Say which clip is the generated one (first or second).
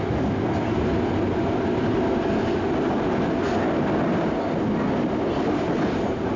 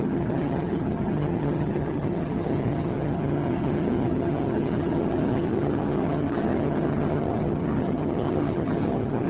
second